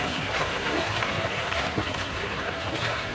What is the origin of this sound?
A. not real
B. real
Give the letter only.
A